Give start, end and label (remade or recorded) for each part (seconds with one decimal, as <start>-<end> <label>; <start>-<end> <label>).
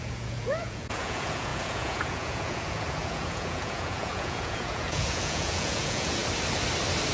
0.0-6.2 remade; 6.2-7.1 recorded